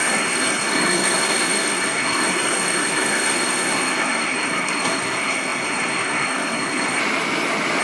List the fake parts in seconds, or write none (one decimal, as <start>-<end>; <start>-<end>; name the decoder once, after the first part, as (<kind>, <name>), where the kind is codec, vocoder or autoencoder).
0.0-7.0 (codec, SNAC)